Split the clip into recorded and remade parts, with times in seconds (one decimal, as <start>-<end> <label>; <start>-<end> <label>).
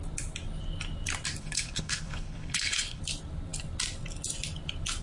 0.0-1.4 recorded; 1.4-3.0 remade; 3.0-5.0 recorded